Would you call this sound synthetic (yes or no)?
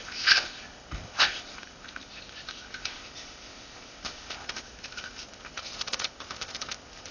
yes